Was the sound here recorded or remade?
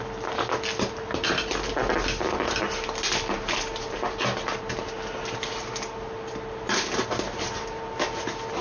recorded